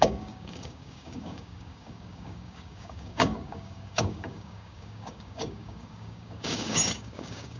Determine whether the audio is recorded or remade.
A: remade